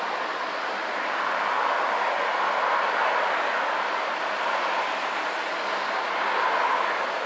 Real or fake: real